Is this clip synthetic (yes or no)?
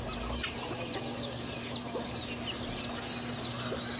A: no